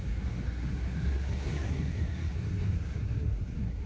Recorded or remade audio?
remade